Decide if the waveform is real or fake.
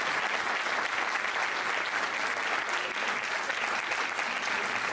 real